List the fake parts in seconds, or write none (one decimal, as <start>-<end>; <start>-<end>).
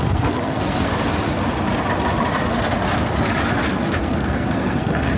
0.0-0.9; 4.0-5.2